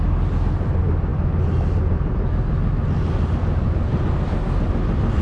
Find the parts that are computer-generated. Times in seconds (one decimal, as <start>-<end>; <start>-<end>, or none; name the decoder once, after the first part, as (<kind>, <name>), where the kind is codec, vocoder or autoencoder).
none